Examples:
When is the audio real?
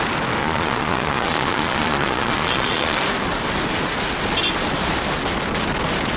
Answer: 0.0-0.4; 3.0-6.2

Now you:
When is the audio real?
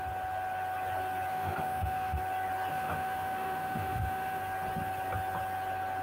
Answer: 0.0-1.3; 2.2-2.7; 4.4-6.0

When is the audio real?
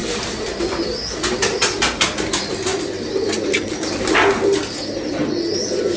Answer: 0.0-6.0